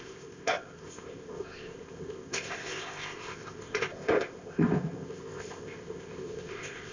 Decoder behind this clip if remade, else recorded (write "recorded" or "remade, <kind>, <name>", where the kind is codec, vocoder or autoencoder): remade, codec, ZipCodec